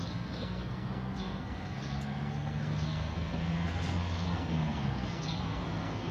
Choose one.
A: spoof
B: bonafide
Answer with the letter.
A